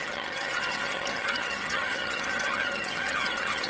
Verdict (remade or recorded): remade